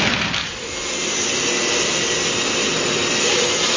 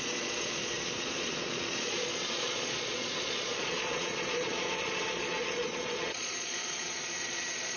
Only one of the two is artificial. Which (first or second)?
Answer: second